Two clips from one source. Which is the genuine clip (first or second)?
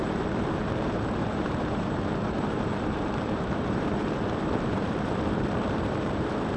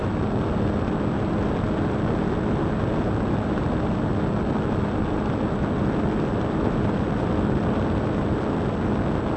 second